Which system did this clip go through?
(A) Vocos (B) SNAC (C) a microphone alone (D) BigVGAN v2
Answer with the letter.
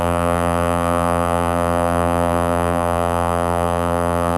D